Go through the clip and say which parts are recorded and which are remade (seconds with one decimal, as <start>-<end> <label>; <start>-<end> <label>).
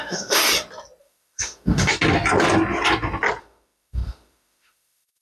0.0-0.4 remade; 0.4-1.0 recorded; 1.0-1.9 remade; 1.9-3.4 recorded; 3.4-5.2 remade